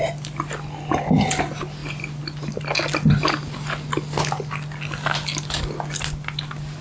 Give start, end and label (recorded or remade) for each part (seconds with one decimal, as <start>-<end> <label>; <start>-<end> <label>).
0.0-6.8 recorded